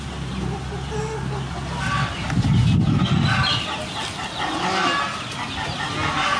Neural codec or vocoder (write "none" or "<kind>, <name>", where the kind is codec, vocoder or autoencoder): none